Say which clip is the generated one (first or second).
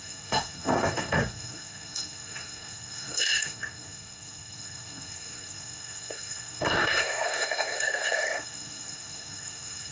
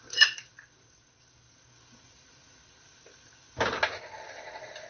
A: first